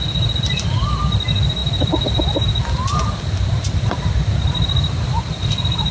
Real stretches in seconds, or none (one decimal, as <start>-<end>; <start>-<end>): 0.0-5.9